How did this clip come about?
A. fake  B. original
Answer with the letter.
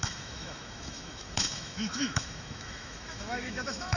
A